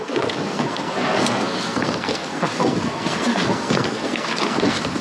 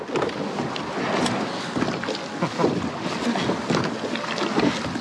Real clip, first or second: second